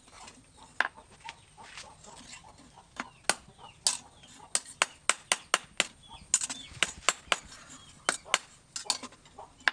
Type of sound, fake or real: real